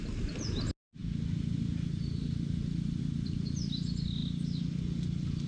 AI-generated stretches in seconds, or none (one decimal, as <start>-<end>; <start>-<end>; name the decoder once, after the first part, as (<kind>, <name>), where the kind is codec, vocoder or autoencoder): none

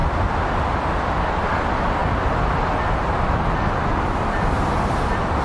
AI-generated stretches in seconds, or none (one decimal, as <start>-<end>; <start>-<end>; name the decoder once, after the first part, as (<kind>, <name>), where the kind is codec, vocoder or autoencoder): none

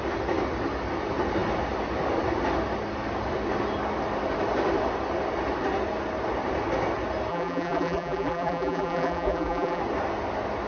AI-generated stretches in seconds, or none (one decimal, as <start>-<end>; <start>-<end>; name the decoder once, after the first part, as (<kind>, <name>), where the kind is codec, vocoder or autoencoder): 7.3-9.8 (vocoder, BigVGAN v2)

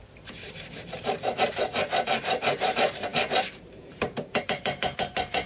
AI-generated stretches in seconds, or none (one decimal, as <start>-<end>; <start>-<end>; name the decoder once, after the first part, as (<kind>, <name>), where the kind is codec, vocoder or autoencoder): 0.0-5.5 (vocoder, BigVGAN v2)

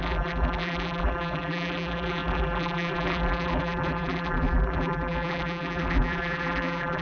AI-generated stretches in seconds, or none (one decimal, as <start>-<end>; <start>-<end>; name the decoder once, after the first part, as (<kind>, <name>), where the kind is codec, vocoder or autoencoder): 0.0-7.0 (vocoder, BigVGAN v2)

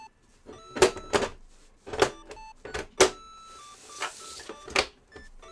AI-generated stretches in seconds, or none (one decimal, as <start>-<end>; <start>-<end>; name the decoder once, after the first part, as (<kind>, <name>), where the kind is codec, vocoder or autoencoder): none

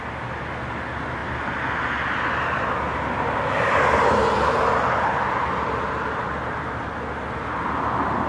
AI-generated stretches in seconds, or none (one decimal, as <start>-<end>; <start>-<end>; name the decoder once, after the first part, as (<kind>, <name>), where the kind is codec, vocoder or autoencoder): none